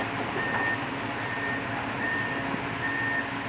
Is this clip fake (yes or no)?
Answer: no